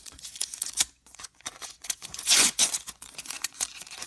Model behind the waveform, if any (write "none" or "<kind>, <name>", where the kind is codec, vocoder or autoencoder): vocoder, Vocos